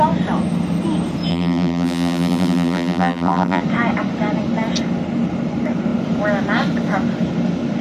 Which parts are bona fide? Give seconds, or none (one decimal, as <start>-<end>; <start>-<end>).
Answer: 0.0-1.3; 3.6-7.8